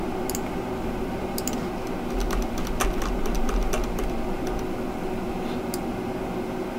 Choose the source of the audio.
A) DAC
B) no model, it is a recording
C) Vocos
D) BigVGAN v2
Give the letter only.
B